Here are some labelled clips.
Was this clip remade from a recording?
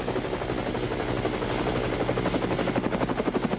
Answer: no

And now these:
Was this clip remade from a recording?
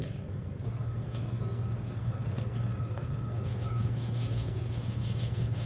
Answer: yes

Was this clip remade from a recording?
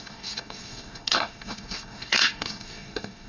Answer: yes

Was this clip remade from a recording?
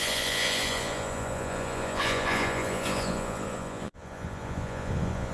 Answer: yes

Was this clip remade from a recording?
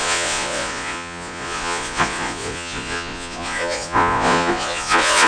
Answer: yes